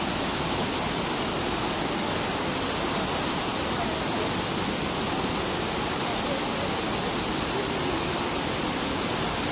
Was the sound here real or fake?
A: real